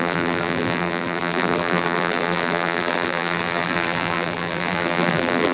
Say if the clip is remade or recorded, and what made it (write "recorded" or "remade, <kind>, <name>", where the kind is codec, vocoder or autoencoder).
remade, vocoder, BigVGAN v2